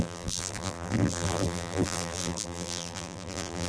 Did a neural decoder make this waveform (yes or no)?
yes